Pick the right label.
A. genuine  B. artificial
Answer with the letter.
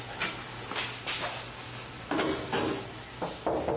A